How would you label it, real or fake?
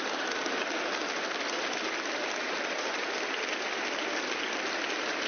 real